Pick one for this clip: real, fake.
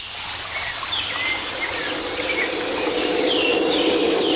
real